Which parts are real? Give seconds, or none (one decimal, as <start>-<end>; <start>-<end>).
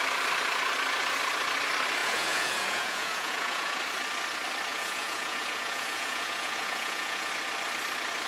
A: 0.0-2.0; 3.8-4.7; 7.3-8.3